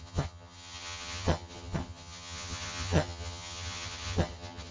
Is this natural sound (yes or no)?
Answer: no